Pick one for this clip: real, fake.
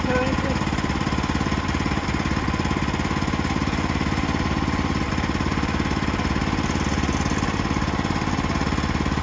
real